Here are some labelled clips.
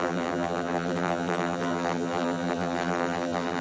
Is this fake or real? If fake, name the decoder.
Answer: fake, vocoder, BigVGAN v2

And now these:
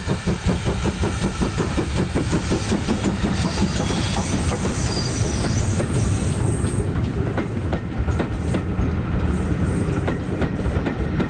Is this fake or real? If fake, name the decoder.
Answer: fake, vocoder, BigVGAN v2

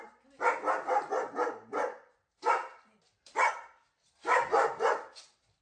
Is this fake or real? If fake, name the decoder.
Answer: fake, vocoder, BigVGAN v2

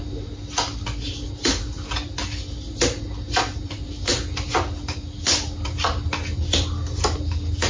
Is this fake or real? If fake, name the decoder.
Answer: real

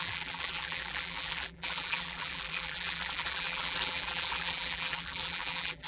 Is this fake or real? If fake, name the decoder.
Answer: fake, vocoder, BigVGAN v2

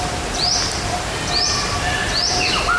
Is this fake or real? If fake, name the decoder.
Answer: real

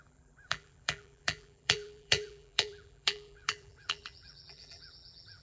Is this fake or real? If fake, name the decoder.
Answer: fake, vocoder, BigVGAN v2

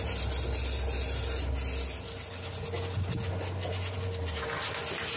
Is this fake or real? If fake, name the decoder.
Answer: real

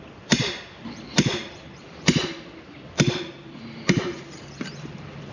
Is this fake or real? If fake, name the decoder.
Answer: fake, vocoder, BigVGAN v2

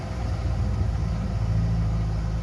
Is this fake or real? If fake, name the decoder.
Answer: real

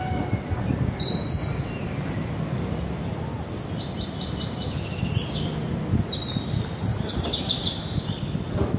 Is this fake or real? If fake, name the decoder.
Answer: real